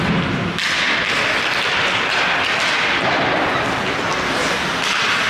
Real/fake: real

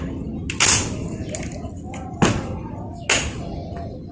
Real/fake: real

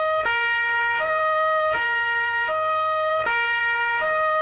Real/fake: fake